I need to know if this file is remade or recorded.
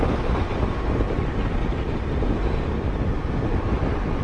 recorded